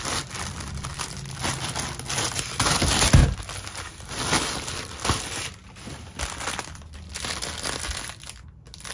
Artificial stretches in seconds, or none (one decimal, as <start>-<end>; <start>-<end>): none